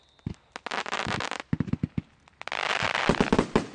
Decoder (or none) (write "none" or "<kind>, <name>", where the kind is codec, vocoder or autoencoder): none